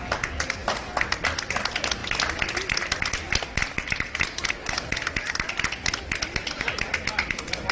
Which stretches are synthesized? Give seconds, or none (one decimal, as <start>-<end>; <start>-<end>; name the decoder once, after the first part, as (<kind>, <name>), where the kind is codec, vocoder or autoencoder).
none